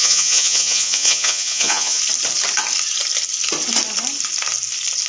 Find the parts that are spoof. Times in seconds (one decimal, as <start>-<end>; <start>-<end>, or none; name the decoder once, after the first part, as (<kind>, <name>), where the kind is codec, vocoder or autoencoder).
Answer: 0.0-2.0 (vocoder, Vocos)